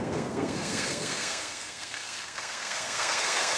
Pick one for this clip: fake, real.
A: fake